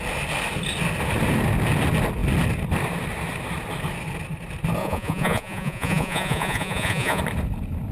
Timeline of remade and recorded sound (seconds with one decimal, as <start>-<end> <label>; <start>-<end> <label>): 0.0-4.8 recorded; 4.8-7.2 remade; 7.2-7.9 recorded